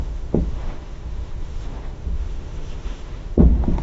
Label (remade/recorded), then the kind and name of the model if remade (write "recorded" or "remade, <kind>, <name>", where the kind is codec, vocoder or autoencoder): remade, autoencoder, DAC-VAE